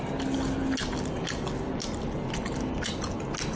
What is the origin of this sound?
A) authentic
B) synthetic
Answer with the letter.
A